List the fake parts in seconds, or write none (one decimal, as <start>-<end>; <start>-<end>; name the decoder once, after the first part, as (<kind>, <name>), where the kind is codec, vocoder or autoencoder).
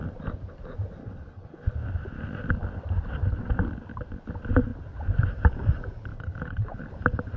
1.0-1.7 (codec, HILCodec); 6.1-6.9